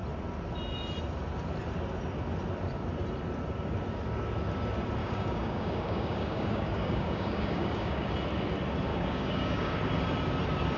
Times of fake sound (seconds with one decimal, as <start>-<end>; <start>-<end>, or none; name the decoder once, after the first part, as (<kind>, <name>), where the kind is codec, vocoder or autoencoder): 5.0-8.1 (codec, DAC); 8.9-9.7